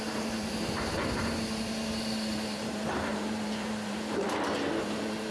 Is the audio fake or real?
fake